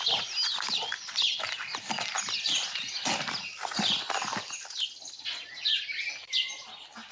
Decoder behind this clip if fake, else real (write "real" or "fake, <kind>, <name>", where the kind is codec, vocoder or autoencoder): real